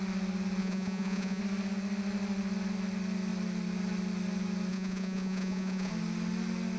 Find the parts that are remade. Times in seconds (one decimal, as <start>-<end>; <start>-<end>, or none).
0.6-1.4; 4.7-5.9